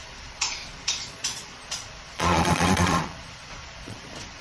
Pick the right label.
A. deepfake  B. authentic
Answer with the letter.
A